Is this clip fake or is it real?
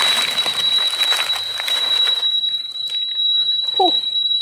real